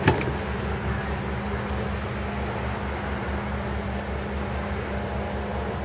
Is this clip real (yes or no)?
yes